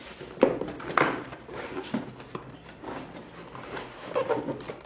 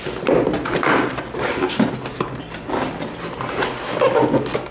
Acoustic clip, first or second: second